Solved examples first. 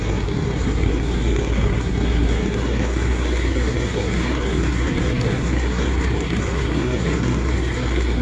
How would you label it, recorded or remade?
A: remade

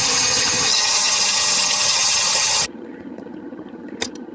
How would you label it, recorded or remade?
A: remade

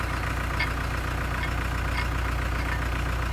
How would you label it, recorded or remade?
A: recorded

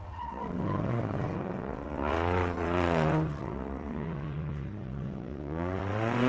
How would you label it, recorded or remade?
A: remade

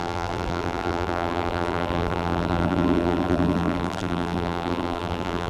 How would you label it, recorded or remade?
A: remade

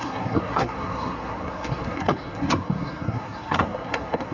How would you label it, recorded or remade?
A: remade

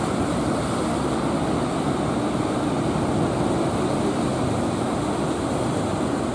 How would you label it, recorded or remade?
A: recorded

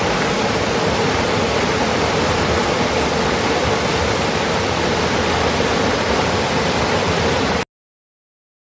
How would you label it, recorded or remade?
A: recorded